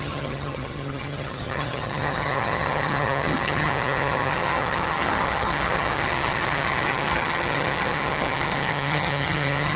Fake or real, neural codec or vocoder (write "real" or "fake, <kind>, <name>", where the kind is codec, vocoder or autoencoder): fake, vocoder, HiFi-GAN